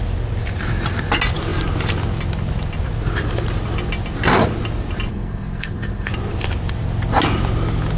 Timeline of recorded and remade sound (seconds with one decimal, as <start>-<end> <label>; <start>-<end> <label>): 0.0-5.1 recorded; 5.1-6.1 remade; 6.1-8.0 recorded